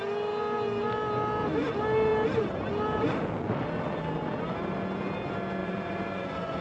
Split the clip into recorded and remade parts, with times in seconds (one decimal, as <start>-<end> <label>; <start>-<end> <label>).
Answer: 0.0-5.6 recorded; 5.6-6.6 remade

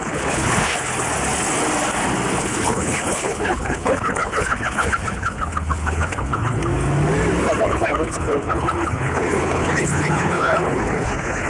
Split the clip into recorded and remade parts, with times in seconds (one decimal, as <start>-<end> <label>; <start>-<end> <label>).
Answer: 0.0-0.9 remade; 0.9-2.4 recorded; 2.4-6.6 remade; 6.6-7.6 recorded; 7.6-11.5 remade

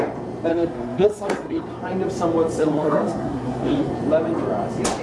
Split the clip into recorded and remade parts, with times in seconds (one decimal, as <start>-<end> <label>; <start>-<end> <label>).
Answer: 0.0-0.5 recorded; 0.5-1.6 remade; 1.6-2.6 recorded; 2.6-3.9 remade; 3.9-5.0 recorded

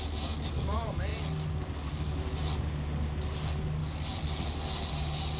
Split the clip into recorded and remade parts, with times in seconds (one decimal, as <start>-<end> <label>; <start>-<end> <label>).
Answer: 0.0-5.4 recorded

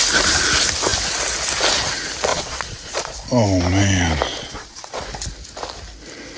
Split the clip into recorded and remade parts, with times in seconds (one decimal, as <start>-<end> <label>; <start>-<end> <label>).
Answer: 0.0-2.3 recorded; 2.3-3.1 remade; 3.1-4.3 recorded; 4.3-5.0 remade; 5.0-6.4 recorded

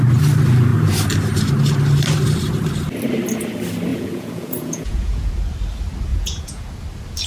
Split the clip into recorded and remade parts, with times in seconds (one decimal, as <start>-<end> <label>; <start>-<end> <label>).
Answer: 0.0-3.9 recorded; 3.9-5.3 remade; 5.3-6.1 recorded; 6.1-6.7 remade; 6.7-7.3 recorded

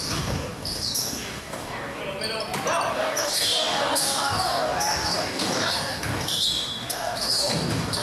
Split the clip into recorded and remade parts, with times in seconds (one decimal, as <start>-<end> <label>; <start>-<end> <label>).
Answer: 0.0-2.0 remade; 2.0-2.9 recorded; 2.9-8.0 remade